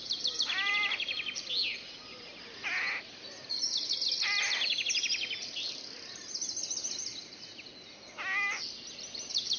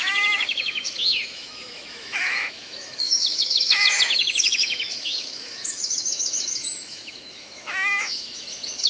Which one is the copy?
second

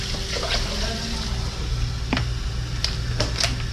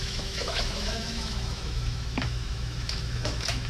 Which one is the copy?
second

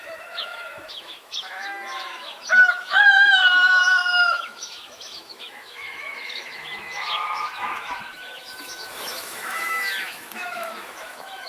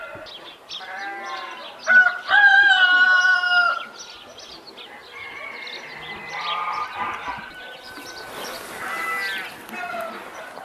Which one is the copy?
first